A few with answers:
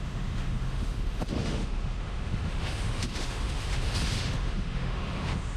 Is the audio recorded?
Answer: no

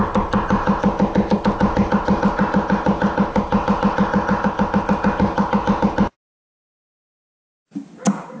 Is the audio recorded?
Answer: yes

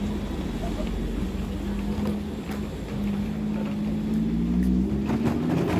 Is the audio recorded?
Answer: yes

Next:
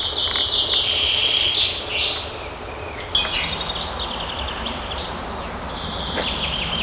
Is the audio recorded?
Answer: yes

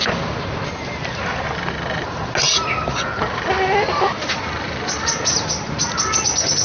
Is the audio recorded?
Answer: yes